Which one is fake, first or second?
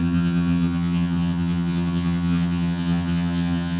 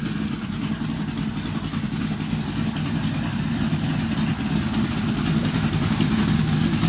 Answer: first